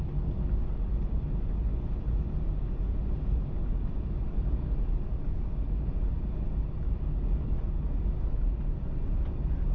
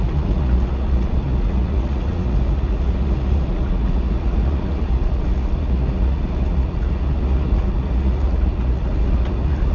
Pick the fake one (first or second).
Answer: second